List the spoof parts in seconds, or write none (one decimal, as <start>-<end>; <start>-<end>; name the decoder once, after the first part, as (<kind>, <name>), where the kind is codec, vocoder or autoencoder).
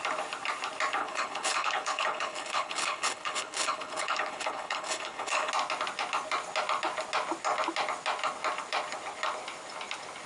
1.0-5.5 (codec, HILCodec)